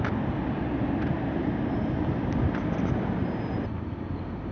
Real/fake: real